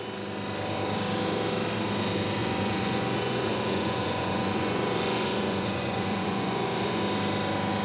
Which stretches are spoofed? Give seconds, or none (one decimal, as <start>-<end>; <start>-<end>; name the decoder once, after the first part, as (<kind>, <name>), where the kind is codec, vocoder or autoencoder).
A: 2.4-7.0 (vocoder, Vocos)